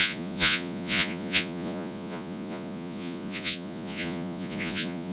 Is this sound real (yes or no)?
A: no